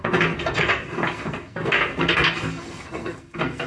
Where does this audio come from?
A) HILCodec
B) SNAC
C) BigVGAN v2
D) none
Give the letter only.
B